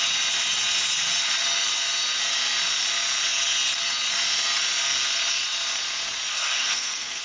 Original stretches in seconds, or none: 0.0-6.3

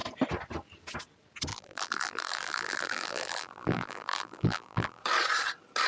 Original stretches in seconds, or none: 0.0-1.5; 5.0-5.9

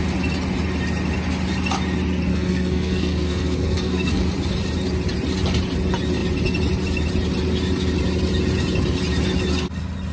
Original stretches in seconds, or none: 0.0-2.3; 4.2-10.1

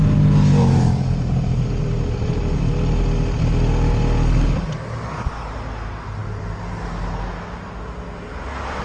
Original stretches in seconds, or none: 0.0-0.5; 2.7-8.8

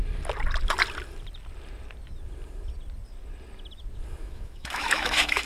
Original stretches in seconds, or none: 0.0-4.2

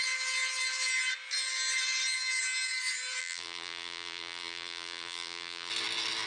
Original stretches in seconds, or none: 0.0-3.2; 5.7-6.3

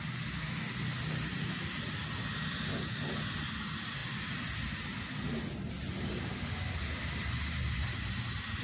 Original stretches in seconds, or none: 0.0-8.6

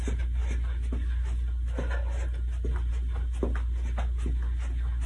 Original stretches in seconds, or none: 0.0-5.1